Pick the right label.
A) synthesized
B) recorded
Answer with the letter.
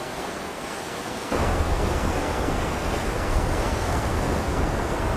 A